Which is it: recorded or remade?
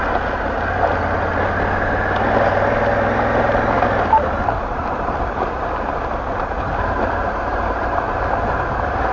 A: recorded